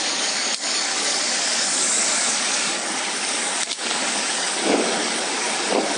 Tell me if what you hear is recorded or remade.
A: remade